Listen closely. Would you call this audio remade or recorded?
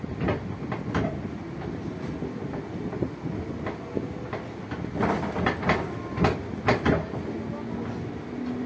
recorded